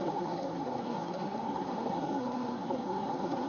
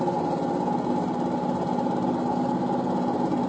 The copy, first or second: first